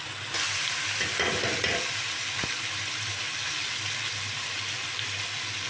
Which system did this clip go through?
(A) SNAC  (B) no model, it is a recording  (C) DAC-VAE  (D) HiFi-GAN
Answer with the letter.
B